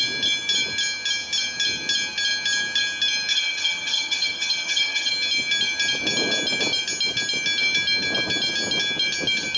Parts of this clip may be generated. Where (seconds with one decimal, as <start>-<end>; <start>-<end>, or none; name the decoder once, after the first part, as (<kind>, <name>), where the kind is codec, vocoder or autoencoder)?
3.3-5.1 (vocoder, HiFi-GAN)